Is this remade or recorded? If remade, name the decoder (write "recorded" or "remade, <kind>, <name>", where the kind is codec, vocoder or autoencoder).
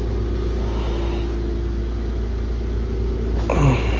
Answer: recorded